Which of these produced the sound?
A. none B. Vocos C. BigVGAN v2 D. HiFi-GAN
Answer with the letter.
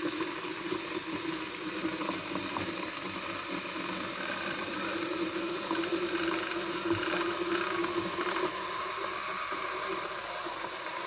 C